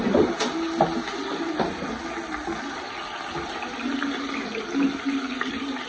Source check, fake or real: real